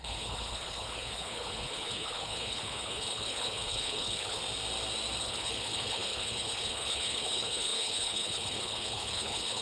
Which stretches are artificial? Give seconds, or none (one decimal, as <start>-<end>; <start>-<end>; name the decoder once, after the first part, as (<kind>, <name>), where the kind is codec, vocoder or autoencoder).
0.0-4.4 (codec, HILCodec); 5.2-9.6

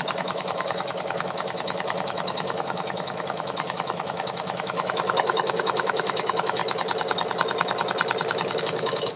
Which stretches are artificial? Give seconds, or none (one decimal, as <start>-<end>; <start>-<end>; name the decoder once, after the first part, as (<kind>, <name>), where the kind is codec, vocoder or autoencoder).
0.0-6.6 (autoencoder, DAC-VAE); 8.6-9.2

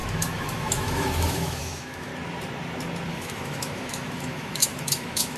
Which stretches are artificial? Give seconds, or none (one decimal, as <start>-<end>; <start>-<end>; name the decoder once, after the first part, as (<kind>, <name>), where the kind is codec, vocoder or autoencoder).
0.0-2.1 (autoencoder, DAC-VAE); 3.1-5.4